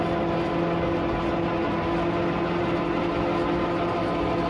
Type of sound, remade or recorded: recorded